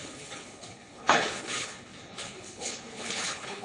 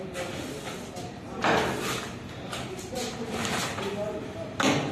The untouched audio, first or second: second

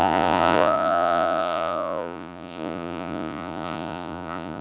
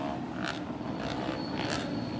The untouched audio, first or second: second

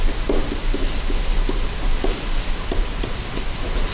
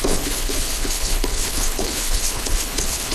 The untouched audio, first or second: first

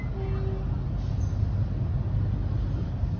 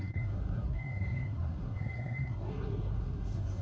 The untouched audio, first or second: first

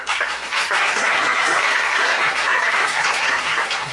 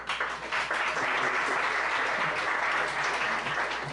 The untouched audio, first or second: second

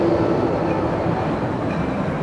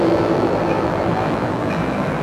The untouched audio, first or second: first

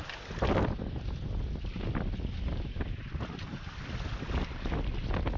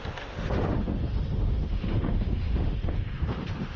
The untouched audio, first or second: first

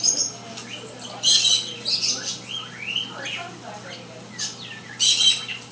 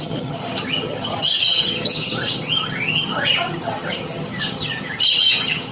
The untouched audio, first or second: first